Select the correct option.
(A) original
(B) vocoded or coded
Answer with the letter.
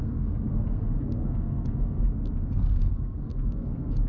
B